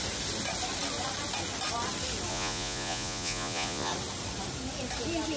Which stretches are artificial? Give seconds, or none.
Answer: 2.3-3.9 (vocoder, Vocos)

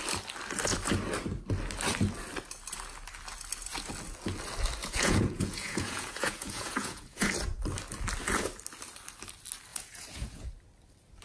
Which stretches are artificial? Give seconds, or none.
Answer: 4.8-7.3 (vocoder, Vocos); 9.7-10.5